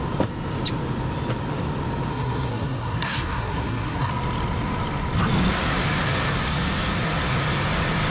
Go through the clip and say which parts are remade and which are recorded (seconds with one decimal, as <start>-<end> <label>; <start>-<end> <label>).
0.0-2.1 recorded; 2.1-4.1 remade; 4.1-8.1 recorded